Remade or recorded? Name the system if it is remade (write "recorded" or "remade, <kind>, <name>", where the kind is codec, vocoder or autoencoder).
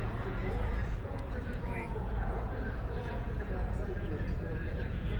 remade, vocoder, Vocos